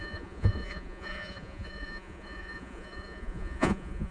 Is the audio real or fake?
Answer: fake